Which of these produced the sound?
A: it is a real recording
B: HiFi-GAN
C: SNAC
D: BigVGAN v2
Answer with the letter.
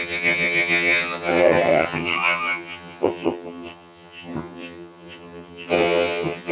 B